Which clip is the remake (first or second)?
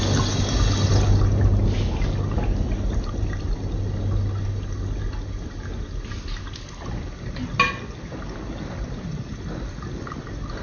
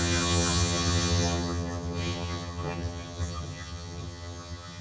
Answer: second